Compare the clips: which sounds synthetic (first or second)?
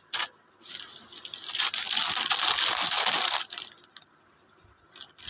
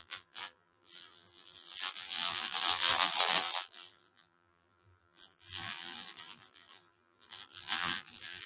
second